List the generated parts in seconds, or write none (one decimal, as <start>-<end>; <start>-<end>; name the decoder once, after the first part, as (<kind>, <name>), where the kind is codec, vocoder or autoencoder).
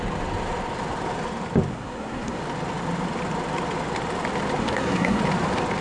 1.7-2.4 (codec, SNAC); 4.6-5.2